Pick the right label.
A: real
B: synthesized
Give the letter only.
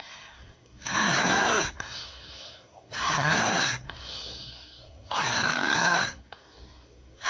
B